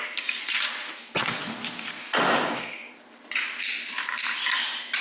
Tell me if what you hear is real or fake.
real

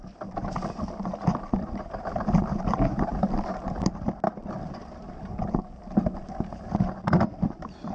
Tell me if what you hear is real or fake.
real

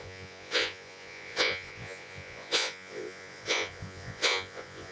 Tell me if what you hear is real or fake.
fake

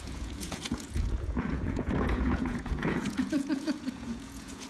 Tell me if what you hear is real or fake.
fake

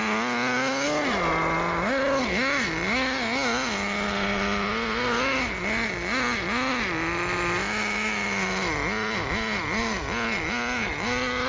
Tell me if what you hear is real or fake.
real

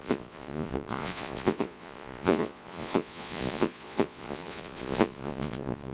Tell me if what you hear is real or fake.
fake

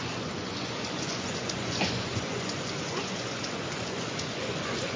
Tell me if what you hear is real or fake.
fake